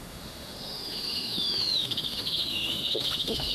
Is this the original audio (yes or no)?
no